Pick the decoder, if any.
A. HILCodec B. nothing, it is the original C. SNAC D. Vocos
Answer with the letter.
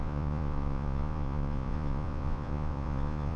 D